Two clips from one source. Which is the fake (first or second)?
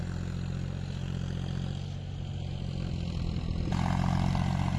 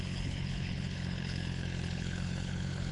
second